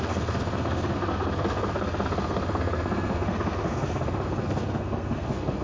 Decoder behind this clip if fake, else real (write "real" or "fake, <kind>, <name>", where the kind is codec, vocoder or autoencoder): fake, codec, SNAC